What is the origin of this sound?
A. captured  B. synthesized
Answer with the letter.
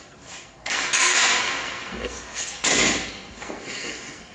B